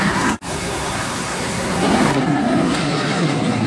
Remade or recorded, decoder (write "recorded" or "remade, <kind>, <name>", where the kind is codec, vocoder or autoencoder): remade, codec, SNAC